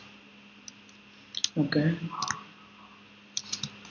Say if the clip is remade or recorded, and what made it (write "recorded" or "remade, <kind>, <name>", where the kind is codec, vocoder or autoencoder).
recorded